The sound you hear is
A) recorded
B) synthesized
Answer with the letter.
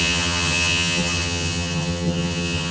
B